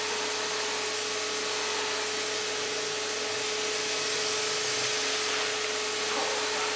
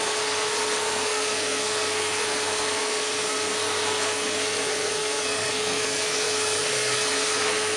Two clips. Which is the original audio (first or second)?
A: first